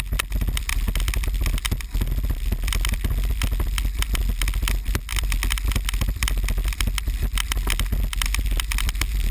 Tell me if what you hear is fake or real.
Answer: real